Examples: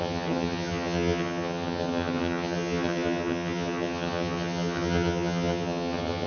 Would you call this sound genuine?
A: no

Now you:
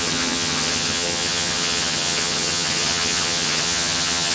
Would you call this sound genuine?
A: no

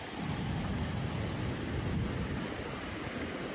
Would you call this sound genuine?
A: yes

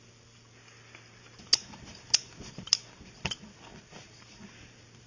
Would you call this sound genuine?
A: yes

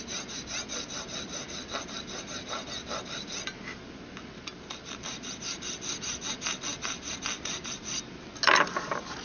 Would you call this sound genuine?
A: yes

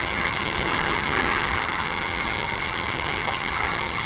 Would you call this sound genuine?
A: no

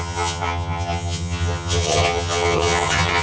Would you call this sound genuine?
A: no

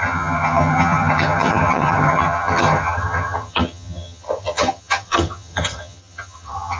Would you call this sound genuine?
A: no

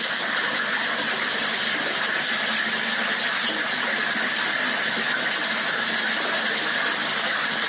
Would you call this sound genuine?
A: yes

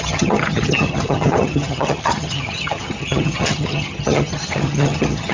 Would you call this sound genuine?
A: no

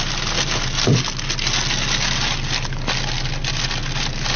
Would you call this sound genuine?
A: yes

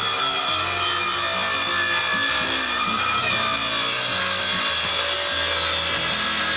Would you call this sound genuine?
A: yes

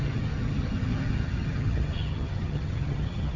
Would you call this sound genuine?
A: no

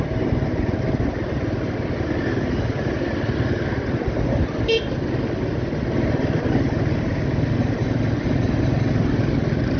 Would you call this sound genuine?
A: yes